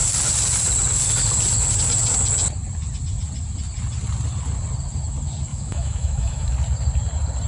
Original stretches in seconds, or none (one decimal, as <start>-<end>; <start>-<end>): 0.0-5.5; 6.5-7.5